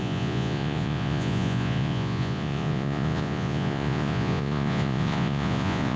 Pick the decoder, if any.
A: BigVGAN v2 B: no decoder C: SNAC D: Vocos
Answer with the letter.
D